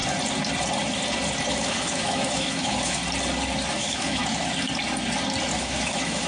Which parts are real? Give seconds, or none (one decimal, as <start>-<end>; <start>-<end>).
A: 0.0-1.5; 3.0-3.7; 4.2-5.6